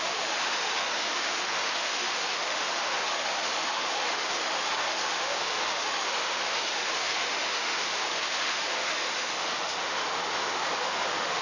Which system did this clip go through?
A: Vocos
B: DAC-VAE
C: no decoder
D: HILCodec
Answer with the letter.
B